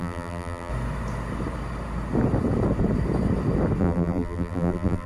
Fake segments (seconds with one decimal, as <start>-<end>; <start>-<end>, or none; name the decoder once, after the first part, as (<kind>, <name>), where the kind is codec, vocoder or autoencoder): 0.0-0.7 (vocoder, BigVGAN v2); 3.8-5.1